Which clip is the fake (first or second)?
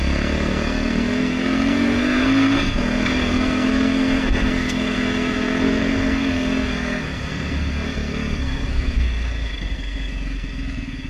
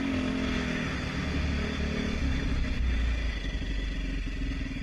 first